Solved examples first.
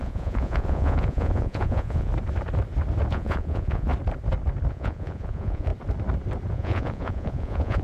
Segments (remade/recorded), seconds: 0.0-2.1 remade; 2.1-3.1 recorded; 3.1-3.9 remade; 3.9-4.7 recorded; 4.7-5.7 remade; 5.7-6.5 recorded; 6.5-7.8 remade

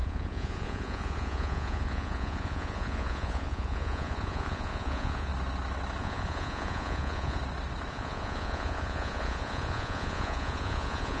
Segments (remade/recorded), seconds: 0.0-5.3 remade; 5.3-6.0 recorded; 6.0-7.4 remade; 7.4-7.9 recorded; 7.9-11.2 remade